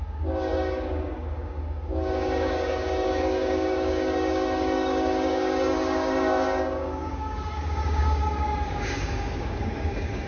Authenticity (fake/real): fake